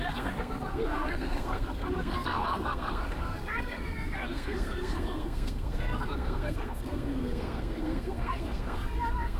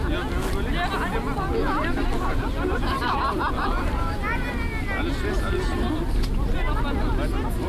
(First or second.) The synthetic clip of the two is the first